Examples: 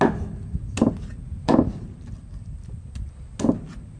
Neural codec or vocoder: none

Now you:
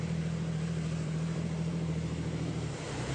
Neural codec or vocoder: vocoder, BigVGAN v2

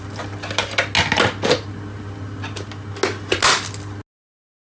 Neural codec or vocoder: none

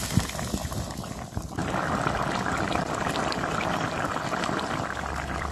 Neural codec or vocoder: vocoder, BigVGAN v2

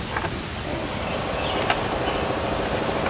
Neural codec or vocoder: none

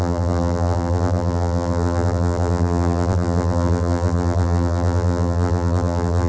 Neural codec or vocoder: vocoder, BigVGAN v2